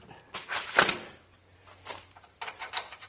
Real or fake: real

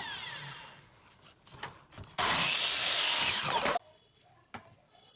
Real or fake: real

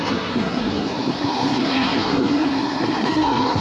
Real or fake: fake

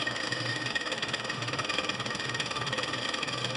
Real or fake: fake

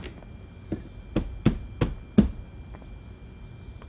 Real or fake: real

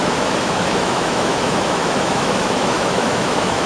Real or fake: fake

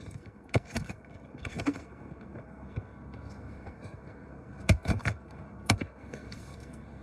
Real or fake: fake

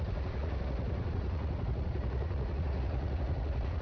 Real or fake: fake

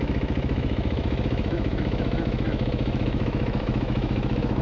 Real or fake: fake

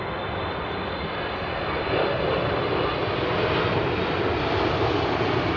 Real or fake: real